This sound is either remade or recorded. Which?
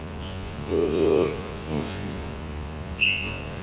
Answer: remade